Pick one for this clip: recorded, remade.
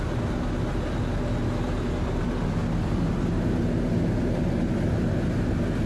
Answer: recorded